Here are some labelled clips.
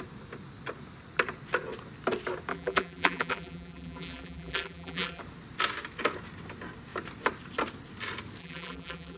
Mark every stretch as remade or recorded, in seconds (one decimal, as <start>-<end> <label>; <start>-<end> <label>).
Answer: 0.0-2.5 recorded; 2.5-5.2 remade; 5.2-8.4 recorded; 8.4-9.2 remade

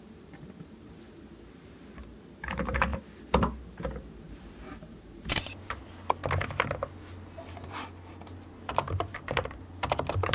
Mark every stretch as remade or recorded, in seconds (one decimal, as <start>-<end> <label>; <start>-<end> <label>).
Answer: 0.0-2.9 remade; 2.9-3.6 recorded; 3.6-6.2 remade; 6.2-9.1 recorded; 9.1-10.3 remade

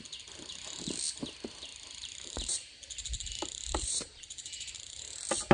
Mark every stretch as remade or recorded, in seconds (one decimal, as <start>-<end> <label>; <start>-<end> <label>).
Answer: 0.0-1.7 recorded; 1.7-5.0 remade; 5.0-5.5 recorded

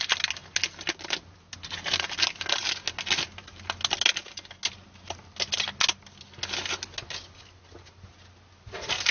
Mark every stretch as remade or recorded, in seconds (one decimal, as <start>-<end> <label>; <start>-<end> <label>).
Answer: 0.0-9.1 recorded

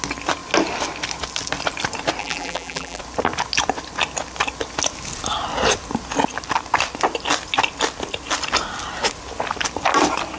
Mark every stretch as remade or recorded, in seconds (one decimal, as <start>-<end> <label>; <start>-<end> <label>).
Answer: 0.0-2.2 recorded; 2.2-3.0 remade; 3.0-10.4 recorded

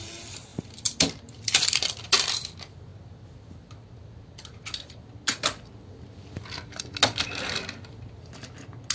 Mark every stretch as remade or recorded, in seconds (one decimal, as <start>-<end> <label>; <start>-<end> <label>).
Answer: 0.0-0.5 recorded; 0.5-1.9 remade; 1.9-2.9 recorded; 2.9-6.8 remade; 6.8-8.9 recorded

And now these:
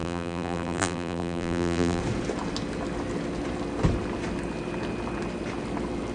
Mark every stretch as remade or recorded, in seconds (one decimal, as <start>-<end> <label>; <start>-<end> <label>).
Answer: 0.0-2.0 remade; 2.0-6.1 recorded